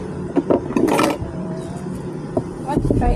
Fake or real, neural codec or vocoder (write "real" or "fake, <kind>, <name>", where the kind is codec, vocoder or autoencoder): fake, vocoder, BigVGAN v2